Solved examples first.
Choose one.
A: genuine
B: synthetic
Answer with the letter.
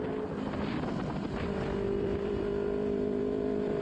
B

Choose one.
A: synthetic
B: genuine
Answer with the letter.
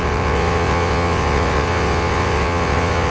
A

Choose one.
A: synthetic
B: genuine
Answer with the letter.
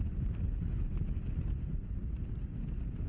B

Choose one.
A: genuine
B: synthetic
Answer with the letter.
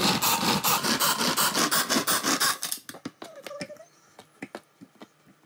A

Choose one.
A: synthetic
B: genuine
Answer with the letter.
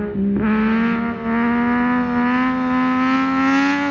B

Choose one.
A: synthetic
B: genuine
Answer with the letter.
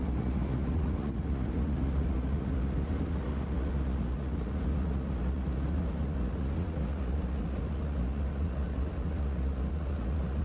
A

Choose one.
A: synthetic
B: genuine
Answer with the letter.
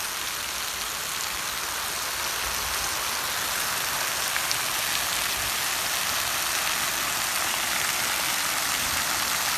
B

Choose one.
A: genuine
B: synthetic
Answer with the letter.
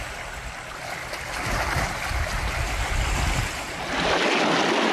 A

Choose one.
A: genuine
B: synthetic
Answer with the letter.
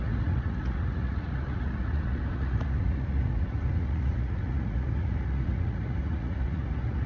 B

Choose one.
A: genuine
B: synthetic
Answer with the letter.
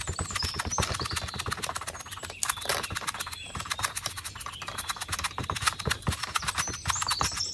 B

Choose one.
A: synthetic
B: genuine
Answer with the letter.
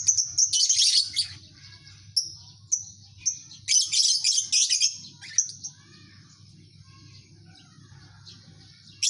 B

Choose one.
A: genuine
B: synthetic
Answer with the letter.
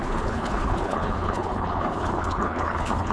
B